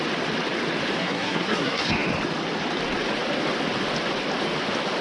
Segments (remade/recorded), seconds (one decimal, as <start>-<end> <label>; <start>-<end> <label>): 0.0-1.0 recorded; 1.0-1.9 remade; 1.9-5.0 recorded